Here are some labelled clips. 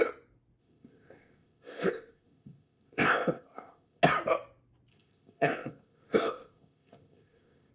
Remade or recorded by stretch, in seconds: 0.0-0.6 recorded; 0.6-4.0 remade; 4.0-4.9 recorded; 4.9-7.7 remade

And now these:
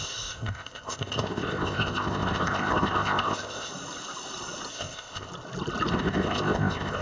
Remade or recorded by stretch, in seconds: 0.0-3.7 remade; 3.7-4.7 recorded; 4.7-5.3 remade; 5.3-5.9 recorded; 5.9-7.0 remade

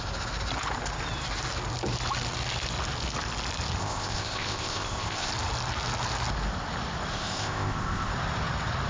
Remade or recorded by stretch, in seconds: 0.0-3.8 recorded; 3.8-5.3 remade; 5.3-7.1 recorded; 7.1-8.1 remade; 8.1-8.9 recorded

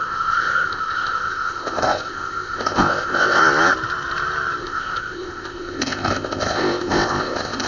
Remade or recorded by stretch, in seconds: 0.0-3.4 remade; 3.4-4.6 recorded; 4.6-7.7 remade